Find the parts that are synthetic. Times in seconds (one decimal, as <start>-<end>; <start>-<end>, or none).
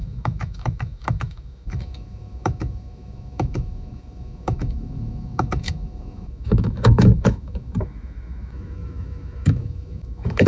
0.0-10.5